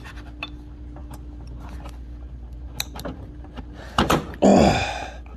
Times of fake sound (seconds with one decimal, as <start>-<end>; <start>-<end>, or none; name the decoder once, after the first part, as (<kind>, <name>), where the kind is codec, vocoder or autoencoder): none